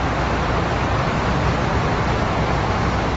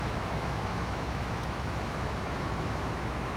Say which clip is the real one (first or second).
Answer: first